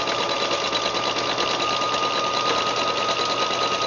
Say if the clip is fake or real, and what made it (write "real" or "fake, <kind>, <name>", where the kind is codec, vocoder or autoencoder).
real